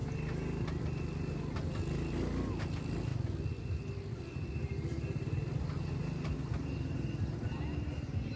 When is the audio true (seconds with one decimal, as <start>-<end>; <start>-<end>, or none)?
0.0-6.0; 6.8-8.4